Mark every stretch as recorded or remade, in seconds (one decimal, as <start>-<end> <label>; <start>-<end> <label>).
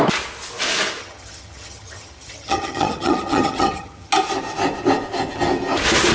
0.0-1.0 recorded; 1.0-4.1 remade; 4.1-6.1 recorded